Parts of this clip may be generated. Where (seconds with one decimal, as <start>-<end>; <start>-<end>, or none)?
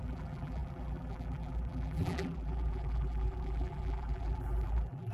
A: 0.0-5.1